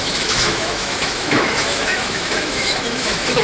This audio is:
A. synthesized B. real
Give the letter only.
A